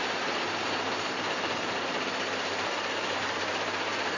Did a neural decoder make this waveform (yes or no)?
yes